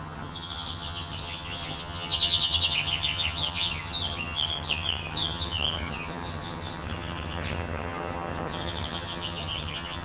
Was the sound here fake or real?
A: fake